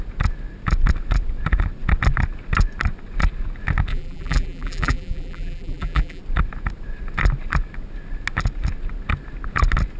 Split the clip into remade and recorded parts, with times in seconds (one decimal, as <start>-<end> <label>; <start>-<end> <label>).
0.0-3.9 recorded; 3.9-6.2 remade; 6.2-10.0 recorded